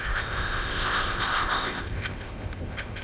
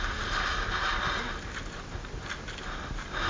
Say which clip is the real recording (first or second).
second